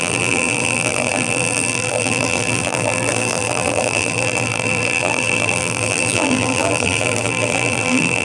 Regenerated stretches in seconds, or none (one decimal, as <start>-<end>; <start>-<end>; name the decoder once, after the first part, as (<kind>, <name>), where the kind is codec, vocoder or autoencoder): 0.0-8.2 (vocoder, BigVGAN v2)